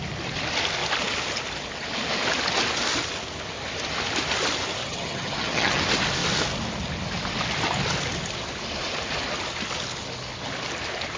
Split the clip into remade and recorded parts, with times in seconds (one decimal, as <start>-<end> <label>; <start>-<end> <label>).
0.0-4.8 recorded; 4.8-5.8 remade; 5.8-11.2 recorded